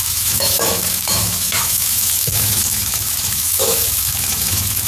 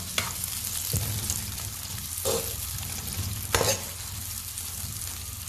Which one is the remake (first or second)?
first